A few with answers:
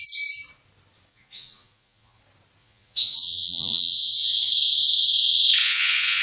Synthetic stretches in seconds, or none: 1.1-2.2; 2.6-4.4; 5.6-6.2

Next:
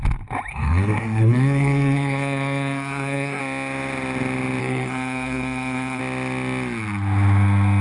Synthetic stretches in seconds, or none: 0.5-3.4; 4.6-6.0

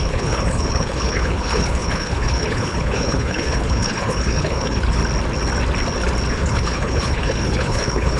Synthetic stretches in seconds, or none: 0.0-5.0; 6.3-8.2